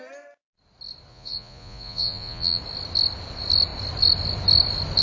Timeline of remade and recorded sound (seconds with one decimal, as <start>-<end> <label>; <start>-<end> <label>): 0.0-1.1 recorded; 1.1-2.6 remade; 2.6-5.0 recorded